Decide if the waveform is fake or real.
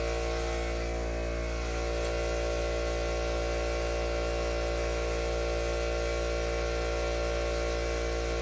real